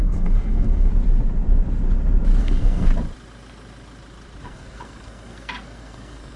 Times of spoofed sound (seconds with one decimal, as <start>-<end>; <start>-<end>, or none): 0.0-0.9; 2.4-2.9; 4.4-6.4